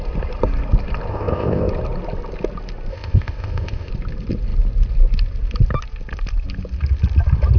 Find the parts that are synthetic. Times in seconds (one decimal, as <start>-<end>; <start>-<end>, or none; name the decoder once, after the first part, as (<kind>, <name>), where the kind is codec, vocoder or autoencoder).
1.1-1.7 (codec, ZipCodec); 2.9-3.9